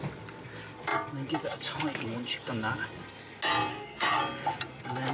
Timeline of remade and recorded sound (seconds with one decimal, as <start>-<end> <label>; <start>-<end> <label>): 0.0-3.7 recorded; 3.7-4.2 remade; 4.2-5.1 recorded

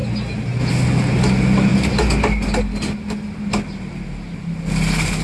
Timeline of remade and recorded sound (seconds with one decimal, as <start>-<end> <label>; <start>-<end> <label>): 0.0-5.2 recorded

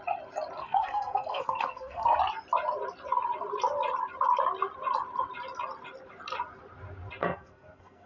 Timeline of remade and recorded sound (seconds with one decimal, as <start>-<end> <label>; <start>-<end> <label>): 0.0-0.6 recorded; 0.6-2.2 remade; 2.2-7.2 recorded; 7.2-8.1 remade

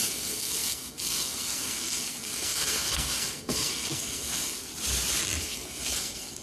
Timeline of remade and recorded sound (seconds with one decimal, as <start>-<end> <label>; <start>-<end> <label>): 0.0-4.7 remade; 4.7-5.4 recorded; 5.4-6.4 remade

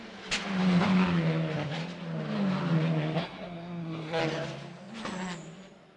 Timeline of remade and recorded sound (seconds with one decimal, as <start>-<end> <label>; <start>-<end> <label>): 0.0-3.2 recorded; 3.2-4.2 remade; 4.2-6.0 recorded

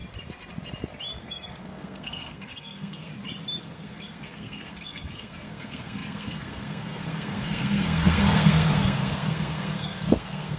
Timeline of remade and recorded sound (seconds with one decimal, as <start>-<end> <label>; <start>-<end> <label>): 0.0-1.2 recorded; 1.2-3.1 remade; 3.1-3.6 recorded; 3.6-10.6 remade